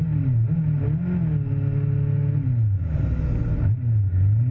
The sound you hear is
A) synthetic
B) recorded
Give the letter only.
B